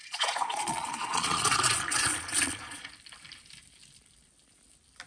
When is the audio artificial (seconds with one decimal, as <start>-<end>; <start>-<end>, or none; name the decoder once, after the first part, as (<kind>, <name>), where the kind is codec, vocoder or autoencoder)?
0.0-2.9 (vocoder, Vocos)